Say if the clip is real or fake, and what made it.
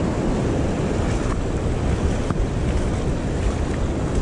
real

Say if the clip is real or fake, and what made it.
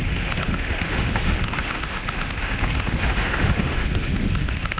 fake, autoencoder, DAC-VAE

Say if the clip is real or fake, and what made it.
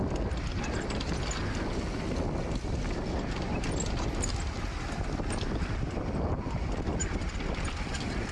real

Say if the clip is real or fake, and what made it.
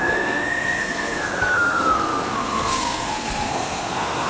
fake, codec, SNAC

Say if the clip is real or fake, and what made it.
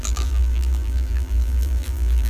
fake, vocoder, BigVGAN v2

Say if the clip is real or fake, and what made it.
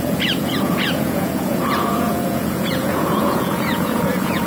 fake, vocoder, Vocos